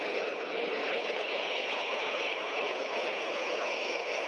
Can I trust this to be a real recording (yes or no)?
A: no